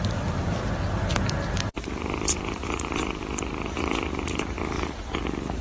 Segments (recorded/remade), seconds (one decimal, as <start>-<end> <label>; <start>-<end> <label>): 0.0-5.6 remade